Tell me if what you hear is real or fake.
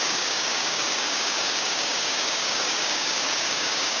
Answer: fake